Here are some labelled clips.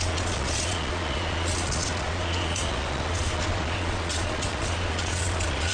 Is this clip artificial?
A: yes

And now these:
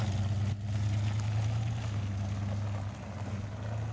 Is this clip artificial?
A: no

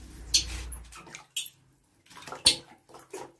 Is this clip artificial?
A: no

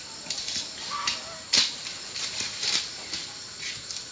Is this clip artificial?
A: no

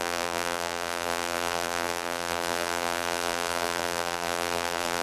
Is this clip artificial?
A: yes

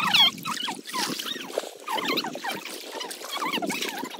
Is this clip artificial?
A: no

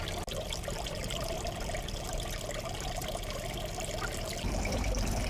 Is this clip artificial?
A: no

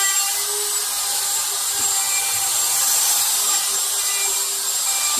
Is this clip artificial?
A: no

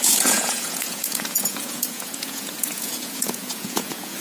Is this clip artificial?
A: yes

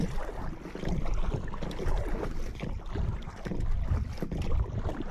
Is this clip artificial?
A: no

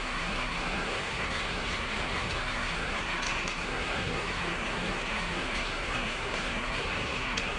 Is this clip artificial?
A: yes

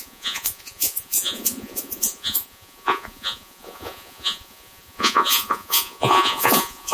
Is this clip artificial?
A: yes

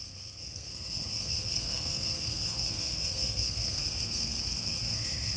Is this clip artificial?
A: yes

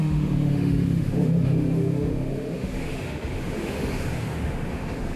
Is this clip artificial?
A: yes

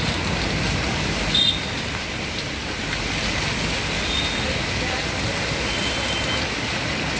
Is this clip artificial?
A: no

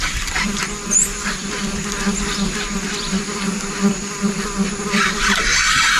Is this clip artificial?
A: no